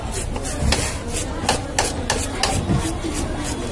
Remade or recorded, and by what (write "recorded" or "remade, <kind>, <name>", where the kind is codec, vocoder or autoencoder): recorded